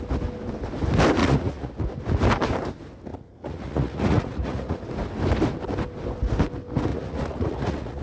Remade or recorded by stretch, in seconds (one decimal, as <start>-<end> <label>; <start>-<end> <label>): 0.0-1.2 recorded; 1.2-1.7 remade; 1.7-3.1 recorded; 3.1-4.8 remade; 4.8-6.9 recorded; 6.9-8.0 remade